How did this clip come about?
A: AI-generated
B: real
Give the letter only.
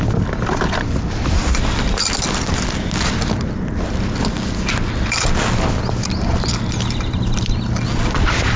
B